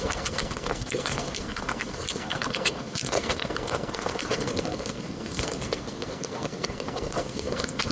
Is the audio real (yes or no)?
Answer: no